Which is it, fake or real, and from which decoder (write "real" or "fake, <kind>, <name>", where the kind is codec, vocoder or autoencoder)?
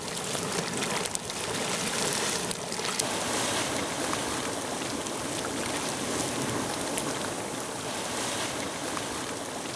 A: real